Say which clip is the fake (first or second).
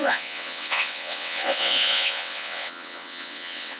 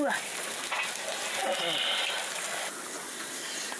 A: first